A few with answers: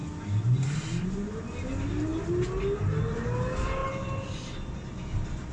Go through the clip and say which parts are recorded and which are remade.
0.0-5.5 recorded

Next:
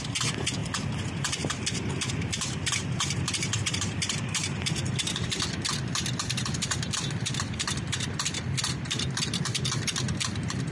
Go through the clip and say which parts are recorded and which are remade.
0.0-0.6 remade; 0.6-2.1 recorded; 2.1-10.7 remade

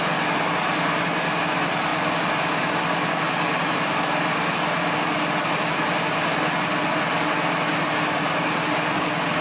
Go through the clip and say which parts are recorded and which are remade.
0.0-9.4 recorded

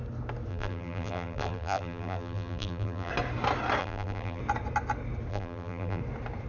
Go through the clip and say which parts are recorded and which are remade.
0.0-0.5 recorded; 0.5-3.1 remade; 3.1-3.8 recorded; 3.8-4.4 remade; 4.4-5.3 recorded; 5.3-6.0 remade; 6.0-6.5 recorded